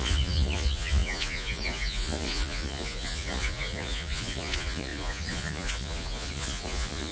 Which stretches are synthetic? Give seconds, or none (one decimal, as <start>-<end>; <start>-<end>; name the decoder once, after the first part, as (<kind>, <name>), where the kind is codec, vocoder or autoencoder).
0.0-7.1 (vocoder, Vocos)